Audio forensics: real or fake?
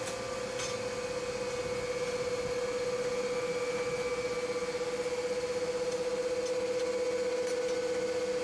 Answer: real